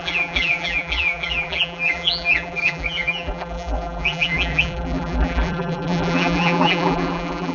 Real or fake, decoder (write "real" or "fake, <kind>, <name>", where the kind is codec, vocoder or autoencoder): fake, vocoder, BigVGAN v2